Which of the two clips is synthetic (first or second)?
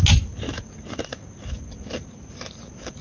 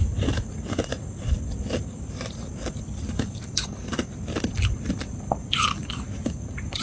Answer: second